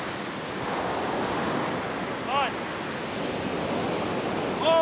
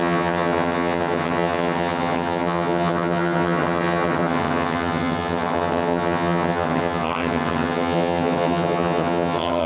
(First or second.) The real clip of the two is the first